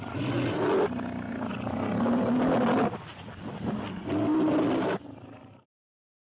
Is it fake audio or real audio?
real